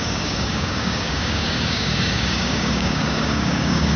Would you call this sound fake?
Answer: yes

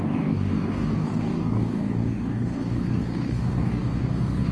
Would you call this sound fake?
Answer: yes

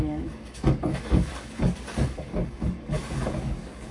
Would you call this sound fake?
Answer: yes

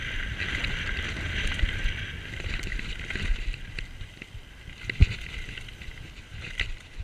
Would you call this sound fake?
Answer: no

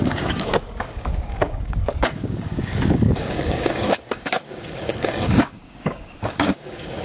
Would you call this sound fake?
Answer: yes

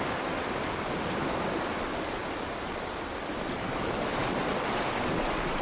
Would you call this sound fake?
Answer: no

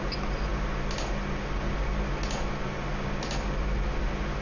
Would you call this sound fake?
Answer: no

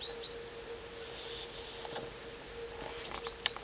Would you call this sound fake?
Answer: no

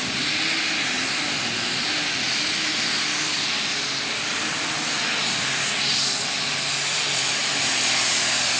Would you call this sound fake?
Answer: no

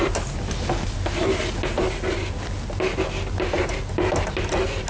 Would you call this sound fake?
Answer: no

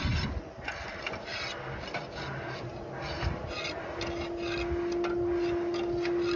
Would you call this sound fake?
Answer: no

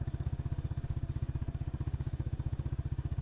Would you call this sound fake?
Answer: yes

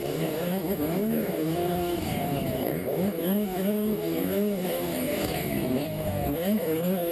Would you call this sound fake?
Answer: yes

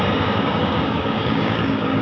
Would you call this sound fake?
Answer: yes